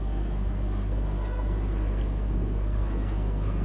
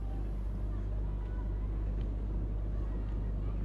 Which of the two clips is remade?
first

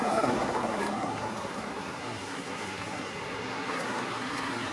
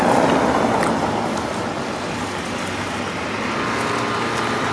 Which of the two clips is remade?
first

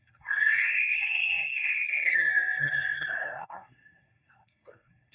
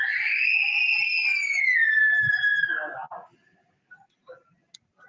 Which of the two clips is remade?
first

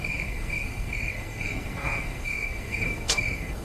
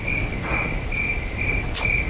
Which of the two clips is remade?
first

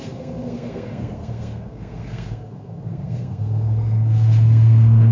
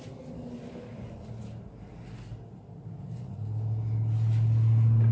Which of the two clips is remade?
first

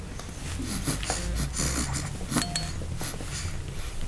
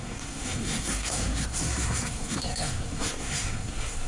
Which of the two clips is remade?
second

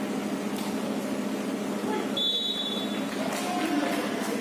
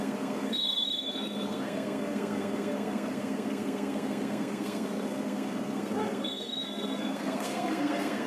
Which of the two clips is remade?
second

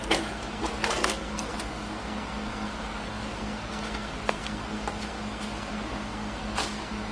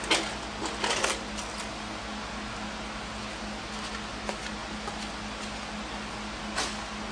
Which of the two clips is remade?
first